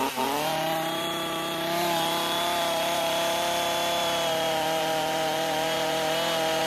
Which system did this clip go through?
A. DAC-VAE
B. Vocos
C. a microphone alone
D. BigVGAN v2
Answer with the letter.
D